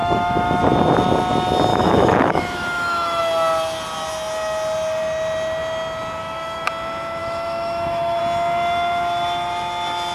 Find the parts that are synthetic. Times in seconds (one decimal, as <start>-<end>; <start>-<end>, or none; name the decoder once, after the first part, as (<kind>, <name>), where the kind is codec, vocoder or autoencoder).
0.0-0.6 (autoencoder, DAC-VAE); 1.7-3.2; 6.2-6.7; 7.2-8.2